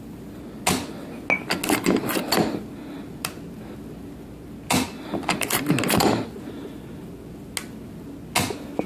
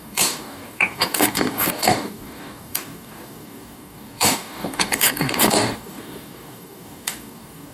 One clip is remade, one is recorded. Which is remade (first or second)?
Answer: second